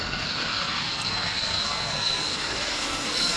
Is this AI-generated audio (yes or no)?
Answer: yes